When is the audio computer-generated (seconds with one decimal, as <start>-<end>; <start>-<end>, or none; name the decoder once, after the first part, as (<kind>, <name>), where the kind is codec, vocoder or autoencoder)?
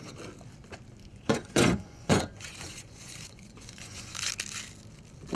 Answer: 1.1-4.3 (vocoder, Vocos)